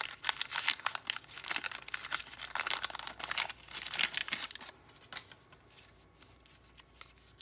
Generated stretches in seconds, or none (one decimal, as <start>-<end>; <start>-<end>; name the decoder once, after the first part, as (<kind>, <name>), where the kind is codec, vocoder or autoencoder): none